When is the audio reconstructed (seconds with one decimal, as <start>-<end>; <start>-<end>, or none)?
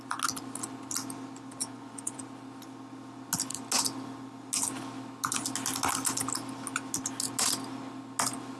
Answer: 1.6-2.2